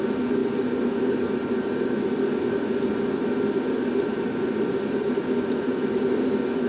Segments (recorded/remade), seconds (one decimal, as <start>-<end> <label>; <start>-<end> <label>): 0.0-6.7 recorded